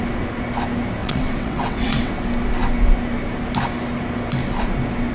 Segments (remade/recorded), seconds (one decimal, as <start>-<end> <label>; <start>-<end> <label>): 0.0-1.0 recorded; 1.0-2.1 remade; 2.1-5.1 recorded